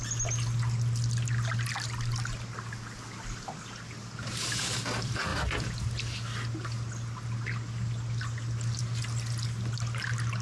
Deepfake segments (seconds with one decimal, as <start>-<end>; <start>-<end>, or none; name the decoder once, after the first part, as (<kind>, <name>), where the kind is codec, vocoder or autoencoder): none